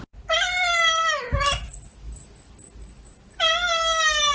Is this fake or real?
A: real